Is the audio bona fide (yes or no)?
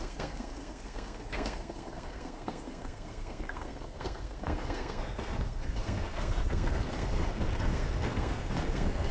no